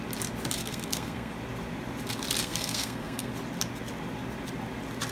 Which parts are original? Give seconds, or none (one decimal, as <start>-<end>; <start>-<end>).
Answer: 0.0-0.6; 1.3-2.4; 3.3-5.1